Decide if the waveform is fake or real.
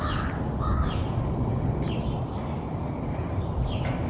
real